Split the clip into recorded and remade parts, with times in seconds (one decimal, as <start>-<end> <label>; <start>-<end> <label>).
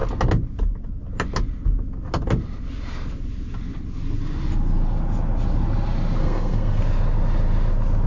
0.0-6.2 recorded; 6.2-6.8 remade; 6.8-8.1 recorded